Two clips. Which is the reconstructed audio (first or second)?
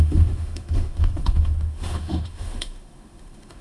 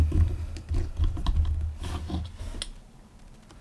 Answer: first